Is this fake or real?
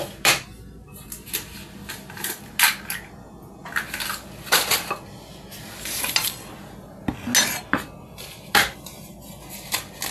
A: real